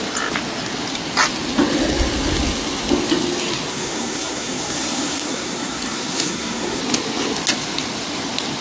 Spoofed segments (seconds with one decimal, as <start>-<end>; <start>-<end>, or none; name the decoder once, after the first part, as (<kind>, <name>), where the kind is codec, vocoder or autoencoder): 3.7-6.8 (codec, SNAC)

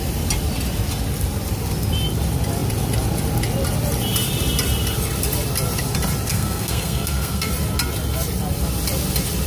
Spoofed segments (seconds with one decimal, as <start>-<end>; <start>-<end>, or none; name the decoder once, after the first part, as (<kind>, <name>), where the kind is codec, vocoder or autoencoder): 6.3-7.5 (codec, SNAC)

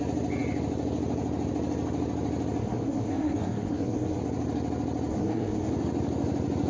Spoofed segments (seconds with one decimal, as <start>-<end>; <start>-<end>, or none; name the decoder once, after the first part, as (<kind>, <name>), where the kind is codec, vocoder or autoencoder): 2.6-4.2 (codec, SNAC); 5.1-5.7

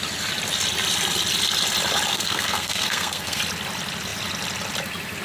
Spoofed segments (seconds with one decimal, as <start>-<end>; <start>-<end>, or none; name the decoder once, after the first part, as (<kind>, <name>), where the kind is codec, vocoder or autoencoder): 2.1-3.4 (codec, SNAC)

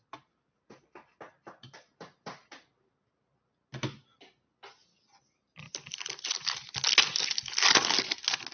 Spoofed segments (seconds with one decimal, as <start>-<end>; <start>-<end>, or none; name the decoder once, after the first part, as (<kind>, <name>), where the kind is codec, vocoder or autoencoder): none

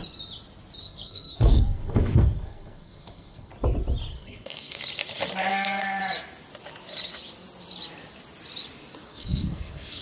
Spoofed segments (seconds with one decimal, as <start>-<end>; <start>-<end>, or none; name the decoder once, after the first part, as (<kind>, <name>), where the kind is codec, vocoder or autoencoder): 0.8-3.5 (codec, SNAC); 4.1-4.8; 5.5-6.0; 9.1-10.0

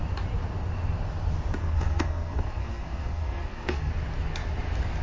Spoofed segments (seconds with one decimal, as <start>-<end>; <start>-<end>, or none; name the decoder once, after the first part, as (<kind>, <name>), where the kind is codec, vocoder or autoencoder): 1.6-3.9 (codec, SNAC)